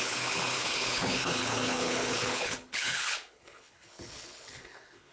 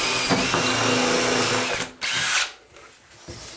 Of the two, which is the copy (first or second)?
first